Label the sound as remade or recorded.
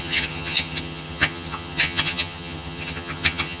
remade